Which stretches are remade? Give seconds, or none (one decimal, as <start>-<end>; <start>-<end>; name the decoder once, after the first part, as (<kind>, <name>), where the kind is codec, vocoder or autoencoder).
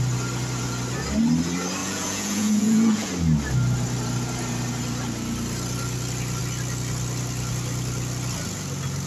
1.8-3.1 (vocoder, Vocos)